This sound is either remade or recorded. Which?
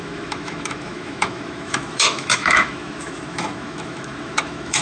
remade